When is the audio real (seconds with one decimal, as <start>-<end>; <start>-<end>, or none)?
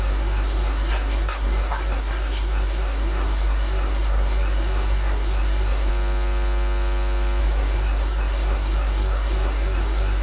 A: 5.9-7.4